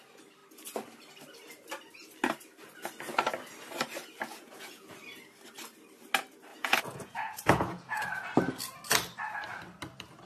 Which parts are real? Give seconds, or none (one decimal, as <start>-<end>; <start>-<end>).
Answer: 0.0-4.3; 4.9-6.5; 8.0-10.3